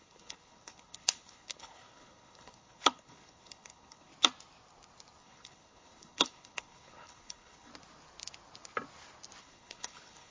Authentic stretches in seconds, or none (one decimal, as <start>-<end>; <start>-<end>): 4.1-5.2; 7.7-9.4